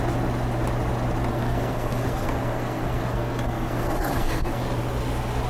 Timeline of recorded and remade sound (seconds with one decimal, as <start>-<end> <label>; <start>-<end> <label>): 0.0-1.3 recorded; 1.3-4.6 remade; 4.6-5.5 recorded